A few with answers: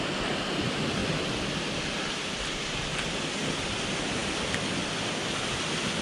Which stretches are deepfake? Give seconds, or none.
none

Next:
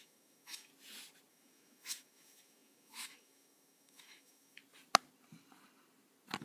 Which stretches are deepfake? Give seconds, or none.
0.0-0.7; 1.3-4.6

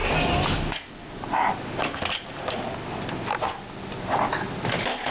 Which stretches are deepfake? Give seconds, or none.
none

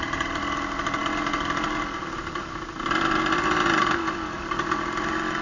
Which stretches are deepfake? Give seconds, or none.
none

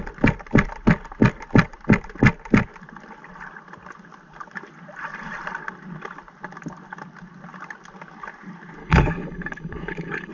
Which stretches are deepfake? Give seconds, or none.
8.8-10.3